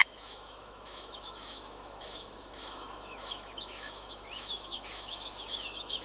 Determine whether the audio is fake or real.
fake